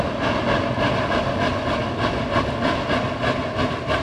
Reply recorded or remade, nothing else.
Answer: recorded